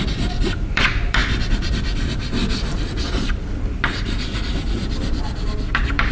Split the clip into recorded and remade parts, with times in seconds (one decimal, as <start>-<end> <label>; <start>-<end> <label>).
0.0-6.1 remade